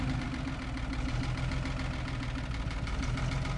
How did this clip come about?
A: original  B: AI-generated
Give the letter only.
A